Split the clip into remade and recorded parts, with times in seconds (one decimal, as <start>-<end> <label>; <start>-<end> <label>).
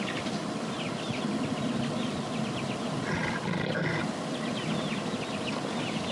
0.0-6.1 recorded